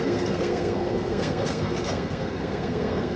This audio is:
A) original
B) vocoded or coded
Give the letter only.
B